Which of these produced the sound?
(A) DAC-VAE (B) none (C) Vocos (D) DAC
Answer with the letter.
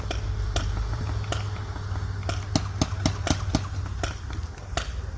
B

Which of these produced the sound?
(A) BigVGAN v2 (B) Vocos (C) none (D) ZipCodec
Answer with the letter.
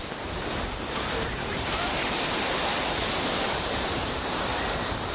A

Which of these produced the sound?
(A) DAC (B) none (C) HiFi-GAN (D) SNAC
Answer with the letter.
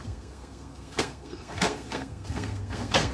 D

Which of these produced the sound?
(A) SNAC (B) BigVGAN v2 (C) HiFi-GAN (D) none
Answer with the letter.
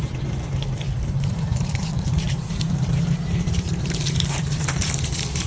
B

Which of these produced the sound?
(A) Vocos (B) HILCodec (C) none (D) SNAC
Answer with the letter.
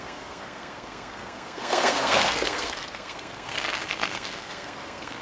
D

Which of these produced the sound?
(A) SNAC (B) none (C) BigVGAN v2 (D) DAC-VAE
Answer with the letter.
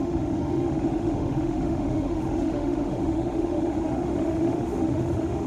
D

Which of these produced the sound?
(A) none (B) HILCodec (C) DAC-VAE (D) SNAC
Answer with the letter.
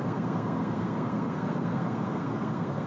D